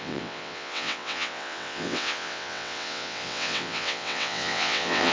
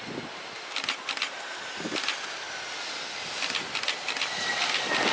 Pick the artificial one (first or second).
first